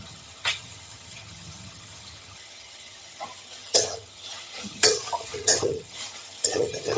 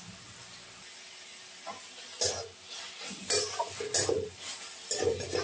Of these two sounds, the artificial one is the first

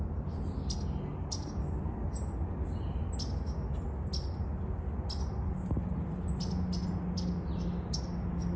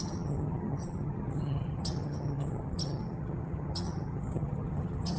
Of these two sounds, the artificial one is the second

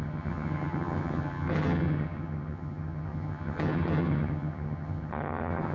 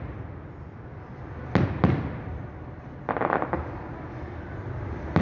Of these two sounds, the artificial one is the first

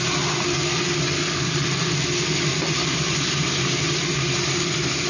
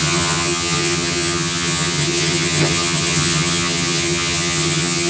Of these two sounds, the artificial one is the second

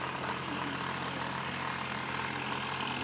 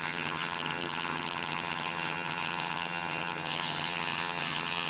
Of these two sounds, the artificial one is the second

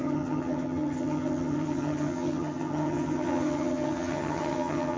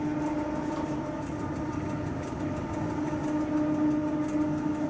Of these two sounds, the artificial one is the first